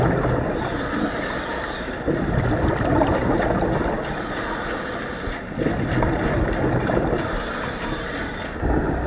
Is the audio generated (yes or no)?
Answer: no